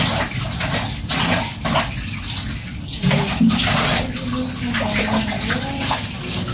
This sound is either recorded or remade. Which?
recorded